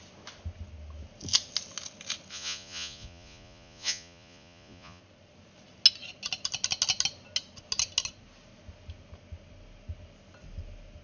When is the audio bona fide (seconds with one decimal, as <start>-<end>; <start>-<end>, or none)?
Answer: 0.0-2.3; 5.0-11.0